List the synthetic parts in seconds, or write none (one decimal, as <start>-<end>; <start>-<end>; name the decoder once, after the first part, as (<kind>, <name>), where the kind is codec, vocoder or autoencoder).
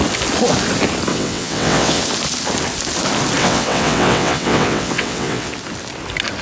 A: 1.1-2.0 (vocoder, WaveNeXt); 3.4-5.5